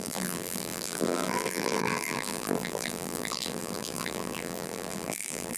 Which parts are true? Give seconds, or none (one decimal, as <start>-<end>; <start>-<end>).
none